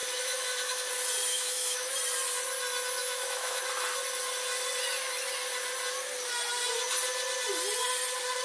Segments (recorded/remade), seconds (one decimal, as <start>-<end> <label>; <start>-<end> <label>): 0.0-0.9 remade; 0.9-1.3 recorded; 1.3-1.9 remade; 1.9-3.0 recorded; 3.0-3.6 remade; 3.6-8.4 recorded